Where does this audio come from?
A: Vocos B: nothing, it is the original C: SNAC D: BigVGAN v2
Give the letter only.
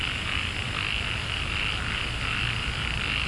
B